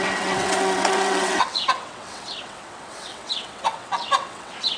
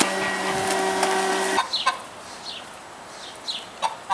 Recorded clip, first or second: second